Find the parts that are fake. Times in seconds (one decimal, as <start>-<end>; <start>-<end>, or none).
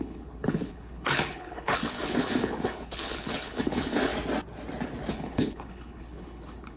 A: 0.0-4.1; 5.1-6.8